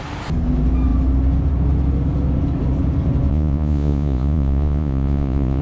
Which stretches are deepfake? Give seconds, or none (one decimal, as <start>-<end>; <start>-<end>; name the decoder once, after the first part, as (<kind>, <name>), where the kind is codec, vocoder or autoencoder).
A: 3.3-5.6 (vocoder, Vocos)